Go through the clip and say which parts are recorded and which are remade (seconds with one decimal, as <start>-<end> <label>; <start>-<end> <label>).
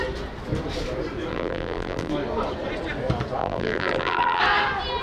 0.0-1.3 recorded; 1.3-2.1 remade; 2.1-3.4 recorded; 3.4-4.4 remade; 4.4-5.0 recorded